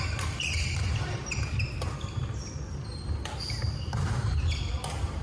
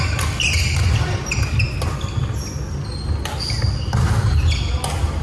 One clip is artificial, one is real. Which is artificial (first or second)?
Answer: first